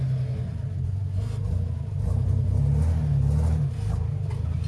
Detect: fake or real real